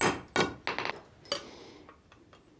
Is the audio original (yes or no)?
yes